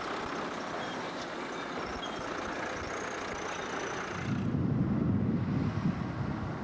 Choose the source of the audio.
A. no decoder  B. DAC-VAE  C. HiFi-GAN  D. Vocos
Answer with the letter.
A